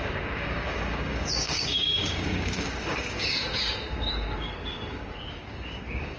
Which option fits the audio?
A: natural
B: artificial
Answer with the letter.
B